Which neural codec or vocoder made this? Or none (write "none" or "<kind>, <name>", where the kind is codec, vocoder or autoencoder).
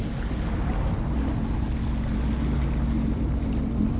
none